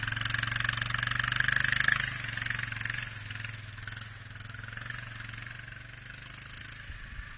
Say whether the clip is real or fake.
real